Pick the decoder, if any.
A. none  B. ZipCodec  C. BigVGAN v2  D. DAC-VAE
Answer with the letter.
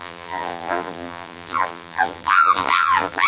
C